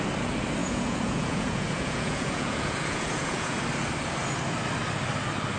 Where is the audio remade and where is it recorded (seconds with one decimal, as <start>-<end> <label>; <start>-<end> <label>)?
0.0-0.6 recorded; 0.6-3.6 remade; 3.6-5.6 recorded

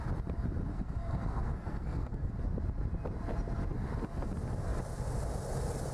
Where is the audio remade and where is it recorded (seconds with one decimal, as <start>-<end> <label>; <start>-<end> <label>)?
0.0-0.7 recorded; 0.7-2.3 remade; 2.3-5.9 recorded

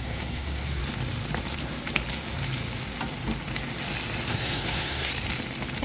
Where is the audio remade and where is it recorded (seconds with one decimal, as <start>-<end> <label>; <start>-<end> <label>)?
0.0-0.8 remade; 0.8-4.3 recorded; 4.3-5.1 remade; 5.1-5.8 recorded

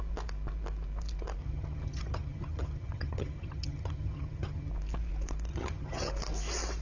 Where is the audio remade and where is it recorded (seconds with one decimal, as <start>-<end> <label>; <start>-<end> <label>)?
0.0-1.4 recorded; 1.4-4.7 remade; 4.7-5.5 recorded; 5.5-6.1 remade; 6.1-6.8 recorded